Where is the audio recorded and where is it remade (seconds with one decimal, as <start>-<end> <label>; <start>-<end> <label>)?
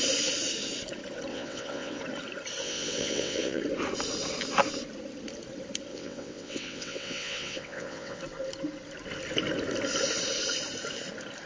0.0-1.3 recorded; 1.3-2.0 remade; 2.0-2.6 recorded; 2.6-3.6 remade; 3.6-5.9 recorded; 5.9-8.2 remade; 8.2-11.5 recorded